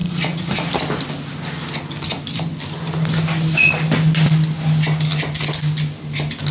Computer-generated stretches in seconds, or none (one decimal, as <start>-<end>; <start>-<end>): 0.0-0.7